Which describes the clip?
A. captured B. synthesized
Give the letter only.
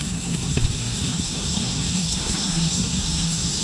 B